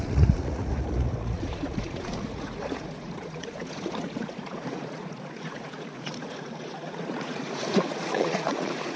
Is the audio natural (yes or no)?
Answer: no